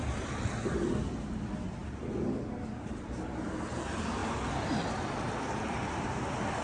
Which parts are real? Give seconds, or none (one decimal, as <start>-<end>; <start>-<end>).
0.0-4.2; 5.5-6.6